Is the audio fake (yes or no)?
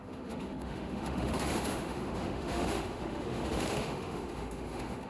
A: yes